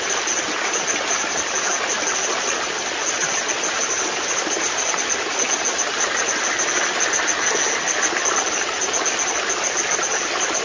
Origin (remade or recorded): recorded